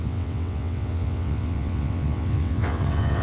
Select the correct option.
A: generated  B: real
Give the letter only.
A